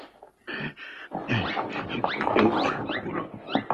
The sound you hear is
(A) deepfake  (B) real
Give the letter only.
B